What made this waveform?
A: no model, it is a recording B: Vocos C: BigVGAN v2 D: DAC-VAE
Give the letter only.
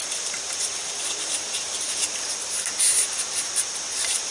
C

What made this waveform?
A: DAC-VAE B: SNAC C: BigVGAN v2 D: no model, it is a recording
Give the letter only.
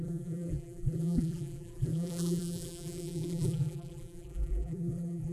C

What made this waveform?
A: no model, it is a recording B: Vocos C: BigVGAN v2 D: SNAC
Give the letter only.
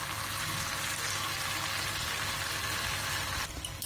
A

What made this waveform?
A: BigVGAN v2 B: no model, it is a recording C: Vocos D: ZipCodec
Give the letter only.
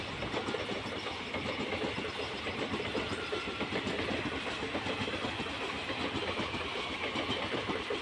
A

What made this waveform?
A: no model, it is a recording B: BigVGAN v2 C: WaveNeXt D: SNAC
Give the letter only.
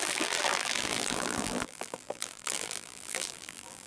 B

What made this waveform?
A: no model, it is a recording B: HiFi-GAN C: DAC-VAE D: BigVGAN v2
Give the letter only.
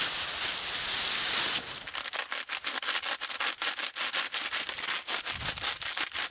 A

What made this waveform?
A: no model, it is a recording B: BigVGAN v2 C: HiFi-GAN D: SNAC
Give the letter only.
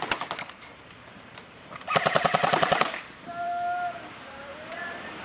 B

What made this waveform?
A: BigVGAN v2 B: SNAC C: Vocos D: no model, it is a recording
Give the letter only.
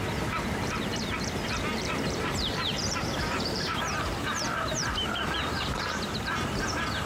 A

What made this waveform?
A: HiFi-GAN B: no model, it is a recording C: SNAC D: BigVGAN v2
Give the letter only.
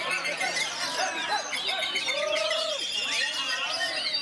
B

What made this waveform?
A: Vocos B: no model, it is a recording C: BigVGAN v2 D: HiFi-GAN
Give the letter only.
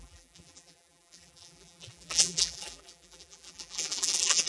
C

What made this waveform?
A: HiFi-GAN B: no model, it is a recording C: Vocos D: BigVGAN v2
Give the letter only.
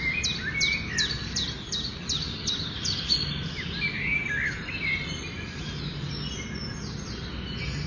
B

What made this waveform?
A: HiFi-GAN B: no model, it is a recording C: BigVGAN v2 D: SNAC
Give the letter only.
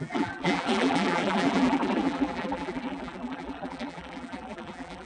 C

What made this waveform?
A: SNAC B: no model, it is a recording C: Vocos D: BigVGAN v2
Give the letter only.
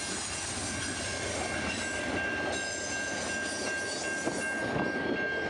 B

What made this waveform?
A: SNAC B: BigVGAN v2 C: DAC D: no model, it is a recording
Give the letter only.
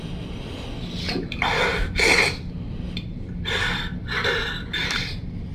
D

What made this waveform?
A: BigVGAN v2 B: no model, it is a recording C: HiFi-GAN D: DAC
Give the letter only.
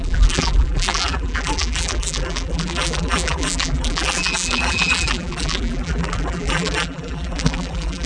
A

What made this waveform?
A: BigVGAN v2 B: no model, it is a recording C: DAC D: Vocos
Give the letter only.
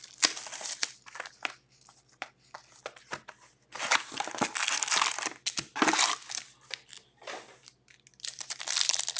B